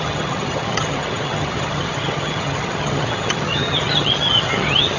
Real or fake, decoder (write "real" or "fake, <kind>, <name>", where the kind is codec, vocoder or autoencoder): fake, vocoder, HiFi-GAN